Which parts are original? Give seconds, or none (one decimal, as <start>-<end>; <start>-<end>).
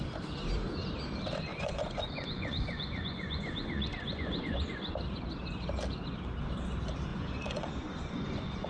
0.0-1.5; 4.9-7.1